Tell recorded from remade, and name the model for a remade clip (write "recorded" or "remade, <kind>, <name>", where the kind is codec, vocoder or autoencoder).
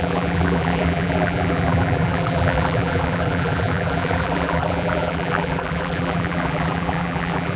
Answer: remade, vocoder, BigVGAN v2